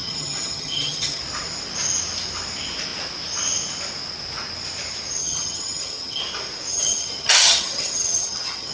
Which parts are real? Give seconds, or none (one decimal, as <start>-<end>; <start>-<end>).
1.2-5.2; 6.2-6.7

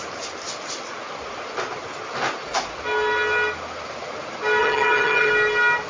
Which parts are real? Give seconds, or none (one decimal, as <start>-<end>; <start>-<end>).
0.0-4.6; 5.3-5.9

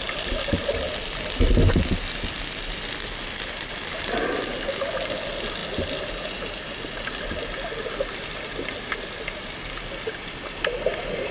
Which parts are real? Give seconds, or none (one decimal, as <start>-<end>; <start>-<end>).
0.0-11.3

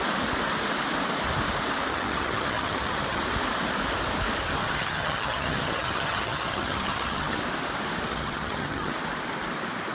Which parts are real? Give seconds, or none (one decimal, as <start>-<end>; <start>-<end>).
0.0-1.9; 3.2-4.6; 7.4-8.1; 8.9-9.9